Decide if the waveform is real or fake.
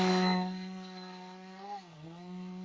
fake